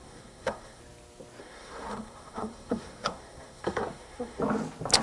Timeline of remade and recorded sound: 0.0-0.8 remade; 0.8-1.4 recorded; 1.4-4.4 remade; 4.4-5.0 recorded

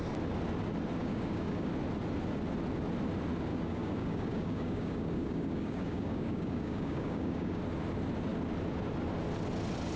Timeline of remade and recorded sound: 0.0-1.0 recorded; 1.0-1.7 remade; 1.7-3.5 recorded; 3.5-7.6 remade; 7.6-10.0 recorded

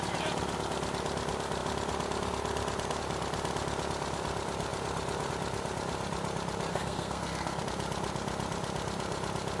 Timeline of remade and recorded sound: 0.0-6.7 recorded; 6.7-7.6 remade; 7.6-9.6 recorded

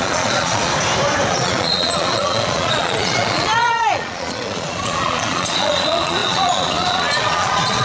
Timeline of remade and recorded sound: 0.0-0.7 remade; 0.7-1.3 recorded; 1.3-7.8 remade

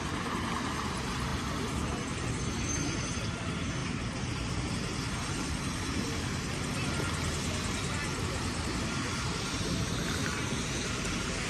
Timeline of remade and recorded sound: 0.0-3.8 recorded; 3.8-4.7 remade; 4.7-11.5 recorded

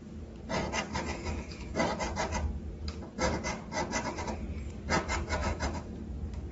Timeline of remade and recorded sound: 0.0-1.1 recorded; 1.1-1.8 remade; 1.8-5.4 recorded; 5.4-6.0 remade; 6.0-6.5 recorded

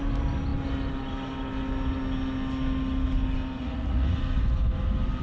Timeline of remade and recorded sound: 0.0-3.6 recorded; 3.6-4.2 remade; 4.2-5.2 recorded